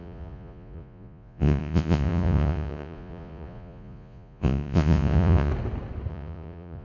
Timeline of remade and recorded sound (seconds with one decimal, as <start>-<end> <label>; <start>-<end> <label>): 0.0-5.5 remade; 5.5-6.1 recorded; 6.1-6.8 remade